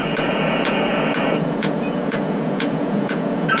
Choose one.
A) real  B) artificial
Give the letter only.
B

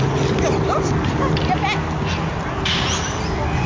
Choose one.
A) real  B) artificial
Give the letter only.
A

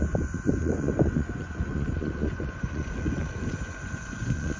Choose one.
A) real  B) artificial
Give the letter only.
B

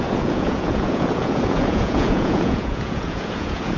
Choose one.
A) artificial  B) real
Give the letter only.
A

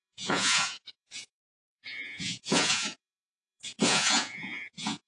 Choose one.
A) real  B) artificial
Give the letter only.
B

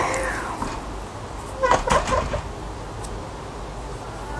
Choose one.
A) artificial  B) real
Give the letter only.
B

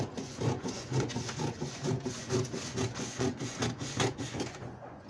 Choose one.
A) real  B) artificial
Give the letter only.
B